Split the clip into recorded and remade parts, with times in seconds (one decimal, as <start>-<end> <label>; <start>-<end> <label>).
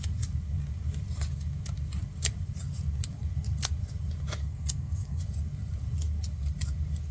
0.0-4.4 recorded; 4.4-5.2 remade; 5.2-7.1 recorded